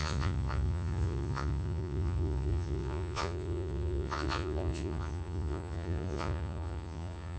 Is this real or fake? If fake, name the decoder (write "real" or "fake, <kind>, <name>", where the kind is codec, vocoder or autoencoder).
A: fake, vocoder, Vocos